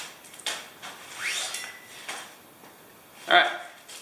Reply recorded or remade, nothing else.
recorded